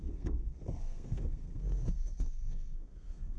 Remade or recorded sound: remade